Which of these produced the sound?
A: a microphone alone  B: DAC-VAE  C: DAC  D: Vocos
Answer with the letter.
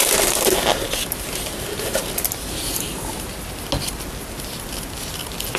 A